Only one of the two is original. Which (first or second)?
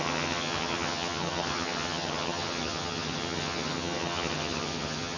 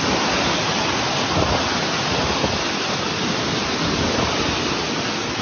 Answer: second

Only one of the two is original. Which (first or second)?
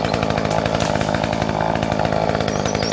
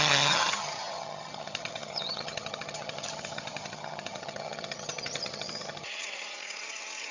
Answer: first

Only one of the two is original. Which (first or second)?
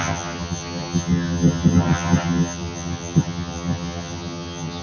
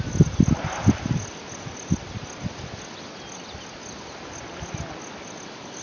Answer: second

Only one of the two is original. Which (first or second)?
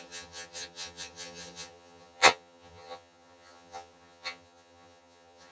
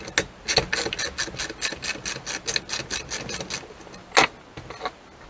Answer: second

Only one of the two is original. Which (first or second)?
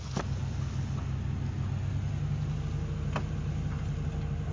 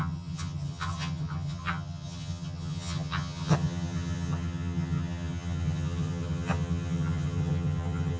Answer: first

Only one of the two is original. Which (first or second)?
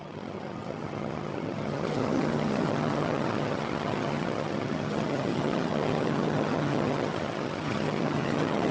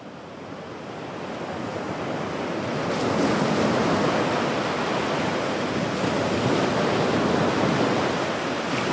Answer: second